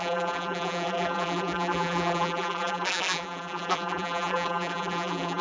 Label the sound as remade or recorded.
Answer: remade